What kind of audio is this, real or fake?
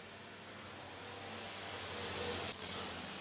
real